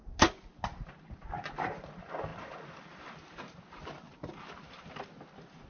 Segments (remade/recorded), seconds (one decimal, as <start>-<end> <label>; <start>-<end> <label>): 0.0-5.7 recorded